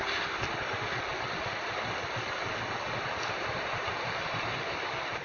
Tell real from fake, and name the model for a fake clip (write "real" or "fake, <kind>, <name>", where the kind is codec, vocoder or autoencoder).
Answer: real